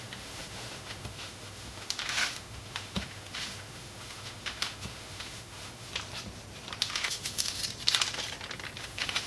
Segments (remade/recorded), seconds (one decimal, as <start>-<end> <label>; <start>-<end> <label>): 0.0-5.9 remade; 5.9-6.8 recorded; 6.8-7.6 remade; 7.6-8.8 recorded; 8.8-9.3 remade